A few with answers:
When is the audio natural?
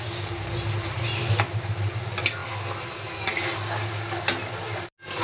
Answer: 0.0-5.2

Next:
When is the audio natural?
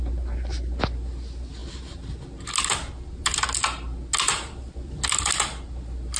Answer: 0.0-6.2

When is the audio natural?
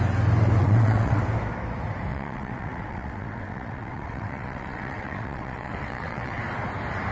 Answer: 0.0-0.6; 1.2-2.1; 6.4-7.1